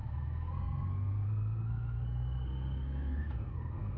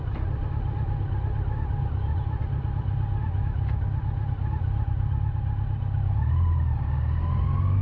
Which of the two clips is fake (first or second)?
first